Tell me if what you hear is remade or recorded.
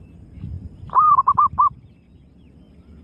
recorded